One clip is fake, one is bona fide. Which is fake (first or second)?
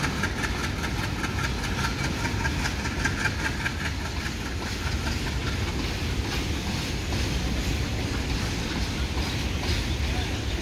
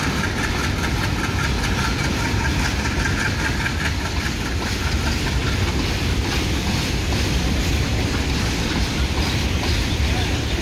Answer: second